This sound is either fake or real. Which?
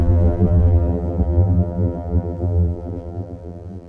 fake